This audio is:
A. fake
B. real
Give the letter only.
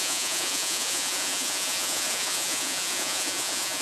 A